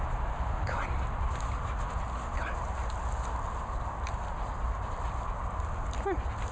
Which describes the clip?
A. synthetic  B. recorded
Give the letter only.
B